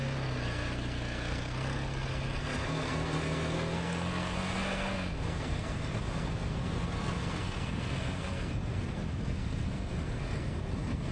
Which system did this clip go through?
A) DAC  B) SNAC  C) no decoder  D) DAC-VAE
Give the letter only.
B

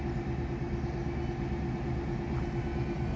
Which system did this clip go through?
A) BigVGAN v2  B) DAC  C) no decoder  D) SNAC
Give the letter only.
C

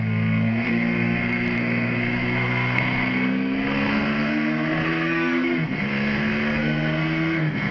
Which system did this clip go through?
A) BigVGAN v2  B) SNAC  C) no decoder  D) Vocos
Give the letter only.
B